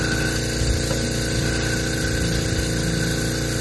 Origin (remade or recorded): recorded